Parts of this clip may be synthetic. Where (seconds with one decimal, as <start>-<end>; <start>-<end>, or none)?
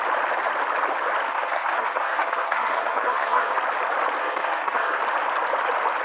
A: 1.3-3.5; 4.2-5.0